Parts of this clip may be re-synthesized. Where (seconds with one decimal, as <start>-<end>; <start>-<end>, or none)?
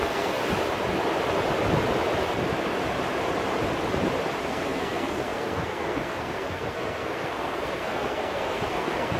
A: 0.0-0.4; 4.4-9.2